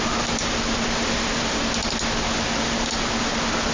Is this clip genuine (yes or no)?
yes